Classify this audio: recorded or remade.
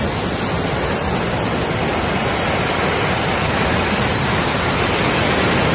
recorded